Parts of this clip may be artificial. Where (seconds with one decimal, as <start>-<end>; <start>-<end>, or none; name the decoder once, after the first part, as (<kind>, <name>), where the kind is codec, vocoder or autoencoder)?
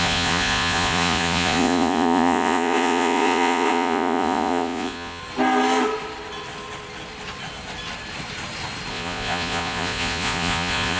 0.0-5.2 (vocoder, Vocos); 8.9-11.0